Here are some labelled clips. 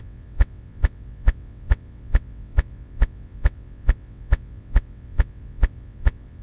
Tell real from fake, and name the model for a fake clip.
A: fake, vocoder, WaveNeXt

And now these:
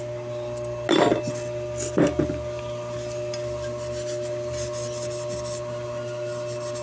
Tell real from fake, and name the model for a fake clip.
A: real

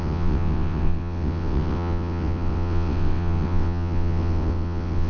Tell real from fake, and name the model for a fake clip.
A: fake, vocoder, WaveNeXt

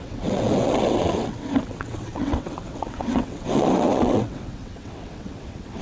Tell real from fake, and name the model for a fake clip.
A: fake, vocoder, WaveNeXt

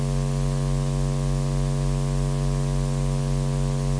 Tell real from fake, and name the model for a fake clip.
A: real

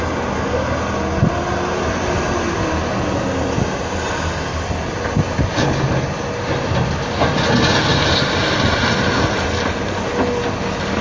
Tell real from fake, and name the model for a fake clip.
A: real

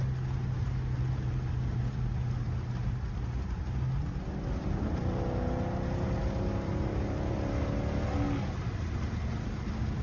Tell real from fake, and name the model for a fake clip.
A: real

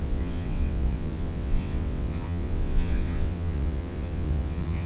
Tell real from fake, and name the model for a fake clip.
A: fake, vocoder, WaveNeXt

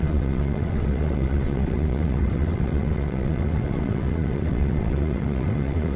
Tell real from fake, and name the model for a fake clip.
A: fake, vocoder, WaveNeXt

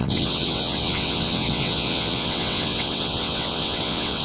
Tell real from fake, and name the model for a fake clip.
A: fake, vocoder, WaveNeXt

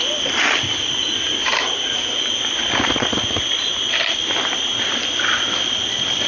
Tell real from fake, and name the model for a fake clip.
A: real